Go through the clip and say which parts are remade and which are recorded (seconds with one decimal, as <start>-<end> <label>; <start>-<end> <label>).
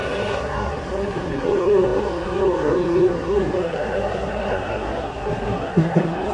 0.0-6.3 remade